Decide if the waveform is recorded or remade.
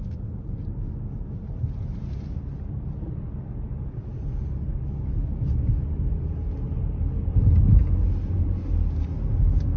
recorded